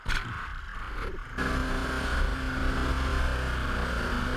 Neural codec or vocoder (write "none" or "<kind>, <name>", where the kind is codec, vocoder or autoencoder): none